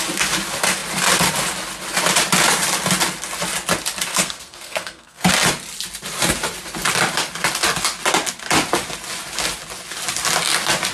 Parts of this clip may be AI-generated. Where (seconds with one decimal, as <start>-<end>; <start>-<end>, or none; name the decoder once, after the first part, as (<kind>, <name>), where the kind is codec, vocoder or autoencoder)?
4.1-5.3 (codec, SNAC)